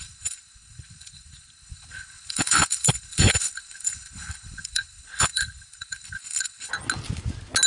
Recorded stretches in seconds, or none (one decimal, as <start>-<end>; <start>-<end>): 6.7-7.7